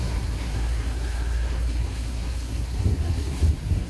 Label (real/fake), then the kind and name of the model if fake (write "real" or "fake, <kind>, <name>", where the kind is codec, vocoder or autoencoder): fake, codec, SNAC